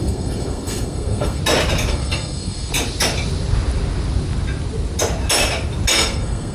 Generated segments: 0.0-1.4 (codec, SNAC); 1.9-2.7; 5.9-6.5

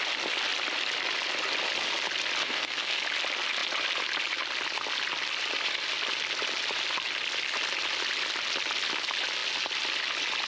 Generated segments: 2.4-3.0 (codec, SNAC)

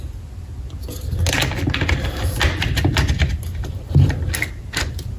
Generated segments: none